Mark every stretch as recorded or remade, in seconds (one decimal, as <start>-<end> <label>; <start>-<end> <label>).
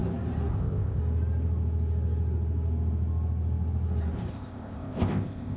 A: 0.0-0.5 recorded; 0.5-1.0 remade; 1.0-4.3 recorded; 4.3-5.6 remade